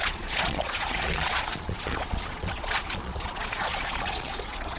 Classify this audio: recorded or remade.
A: remade